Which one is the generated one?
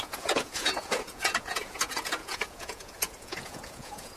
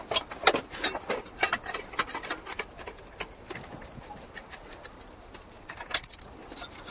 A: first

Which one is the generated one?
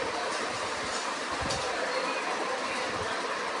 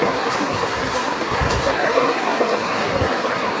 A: second